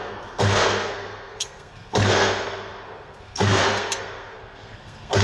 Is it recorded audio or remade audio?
remade